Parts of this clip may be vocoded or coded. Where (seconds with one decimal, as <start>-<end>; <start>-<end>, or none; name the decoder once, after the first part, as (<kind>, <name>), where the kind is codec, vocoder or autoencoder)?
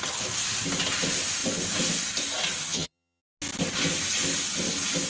2.6-3.2 (vocoder, HiFi-GAN)